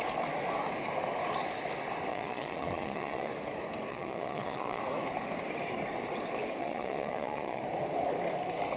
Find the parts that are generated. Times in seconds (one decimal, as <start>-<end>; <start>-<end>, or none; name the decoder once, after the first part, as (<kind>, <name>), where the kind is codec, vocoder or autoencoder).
2.1-3.3 (vocoder, Vocos); 3.9-4.8; 6.6-7.6